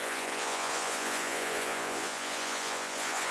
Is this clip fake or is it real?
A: fake